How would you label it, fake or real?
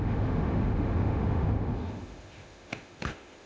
fake